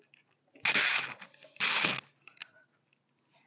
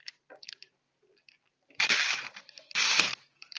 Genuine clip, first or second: first